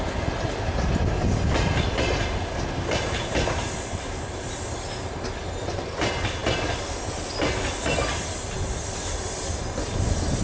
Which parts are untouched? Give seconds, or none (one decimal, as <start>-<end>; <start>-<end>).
0.0-10.4